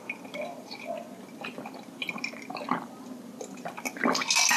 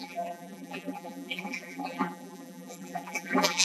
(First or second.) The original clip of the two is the first